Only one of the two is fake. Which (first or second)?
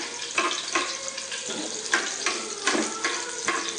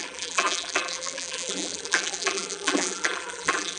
second